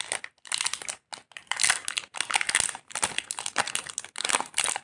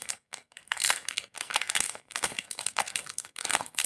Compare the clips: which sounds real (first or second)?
first